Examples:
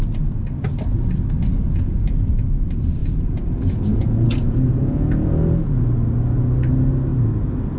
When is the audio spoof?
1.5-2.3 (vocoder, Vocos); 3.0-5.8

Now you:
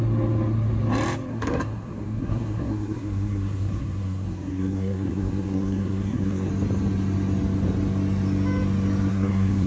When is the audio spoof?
1.3-6.5 (codec, SNAC); 9.1-9.7